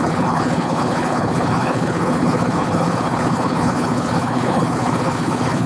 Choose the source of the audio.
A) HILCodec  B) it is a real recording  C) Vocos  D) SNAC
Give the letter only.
A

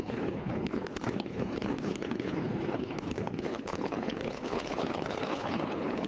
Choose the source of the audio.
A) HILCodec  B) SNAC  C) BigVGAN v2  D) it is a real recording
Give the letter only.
A